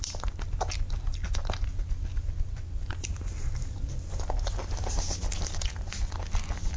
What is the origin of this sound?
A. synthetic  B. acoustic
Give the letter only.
B